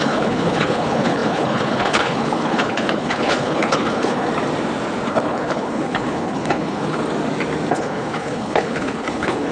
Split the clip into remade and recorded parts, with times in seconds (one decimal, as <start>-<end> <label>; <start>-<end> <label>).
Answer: 0.0-4.3 remade; 4.3-5.1 recorded; 5.1-7.0 remade; 7.0-7.7 recorded; 7.7-9.5 remade